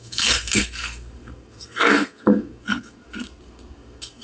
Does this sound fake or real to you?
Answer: fake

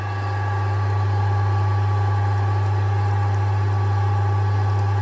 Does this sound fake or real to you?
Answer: real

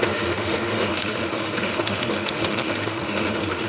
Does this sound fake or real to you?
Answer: fake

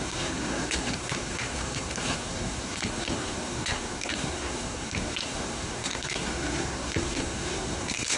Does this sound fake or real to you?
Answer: fake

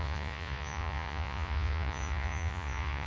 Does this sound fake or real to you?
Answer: fake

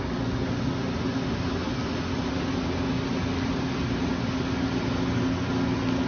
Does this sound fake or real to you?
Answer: real